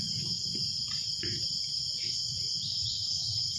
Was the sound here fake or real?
real